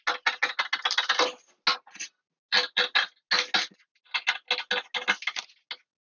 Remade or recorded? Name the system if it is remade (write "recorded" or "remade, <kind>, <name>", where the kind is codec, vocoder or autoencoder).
recorded